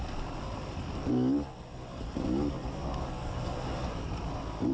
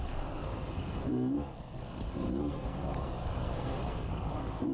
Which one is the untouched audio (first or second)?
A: first